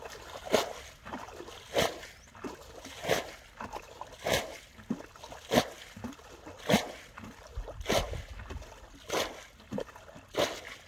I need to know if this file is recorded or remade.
recorded